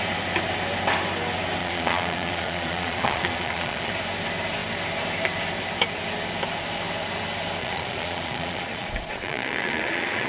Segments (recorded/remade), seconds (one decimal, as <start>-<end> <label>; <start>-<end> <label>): 0.0-1.6 recorded; 1.6-3.9 remade; 3.9-7.6 recorded; 7.6-10.3 remade